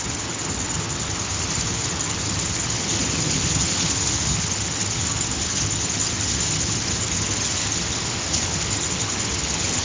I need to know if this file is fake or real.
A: fake